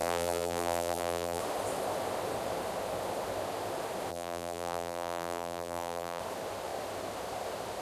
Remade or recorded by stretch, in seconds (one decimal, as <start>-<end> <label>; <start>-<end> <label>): 0.0-1.4 remade; 1.4-4.1 recorded; 4.1-6.2 remade; 6.2-7.8 recorded

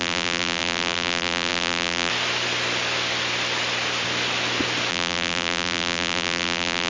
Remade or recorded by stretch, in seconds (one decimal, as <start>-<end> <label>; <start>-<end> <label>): 0.0-2.1 remade; 2.1-4.9 recorded; 4.9-6.9 remade